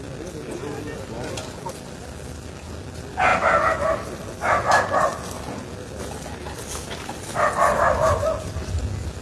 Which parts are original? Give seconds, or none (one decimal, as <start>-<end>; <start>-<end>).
0.0-9.2